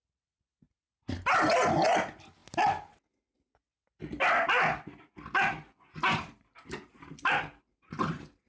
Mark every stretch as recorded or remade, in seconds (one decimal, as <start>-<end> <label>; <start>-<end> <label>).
0.0-8.5 recorded